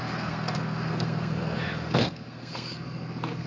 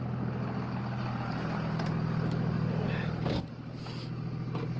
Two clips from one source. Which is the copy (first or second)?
first